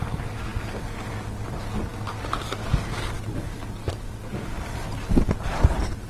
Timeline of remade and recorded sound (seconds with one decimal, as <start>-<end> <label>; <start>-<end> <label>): 0.0-6.1 recorded